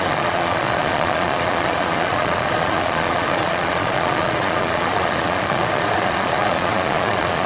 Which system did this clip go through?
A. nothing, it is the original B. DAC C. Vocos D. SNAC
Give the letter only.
C